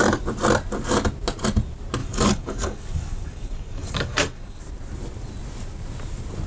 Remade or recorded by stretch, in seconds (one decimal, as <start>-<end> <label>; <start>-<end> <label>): 0.0-2.0 recorded; 2.0-4.6 remade; 4.6-6.5 recorded